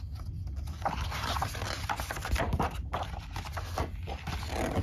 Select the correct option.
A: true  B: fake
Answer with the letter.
A